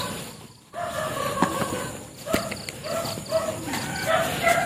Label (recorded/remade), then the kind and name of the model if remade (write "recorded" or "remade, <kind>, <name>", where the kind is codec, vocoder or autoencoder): recorded